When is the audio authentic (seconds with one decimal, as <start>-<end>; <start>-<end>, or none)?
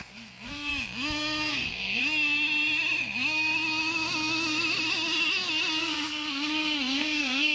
0.7-1.5; 2.0-5.8